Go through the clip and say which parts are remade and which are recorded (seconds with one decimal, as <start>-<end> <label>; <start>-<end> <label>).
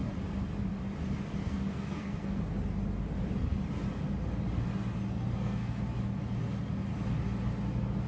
0.0-1.4 recorded; 1.4-2.4 remade; 2.4-5.1 recorded; 5.1-5.8 remade; 5.8-8.1 recorded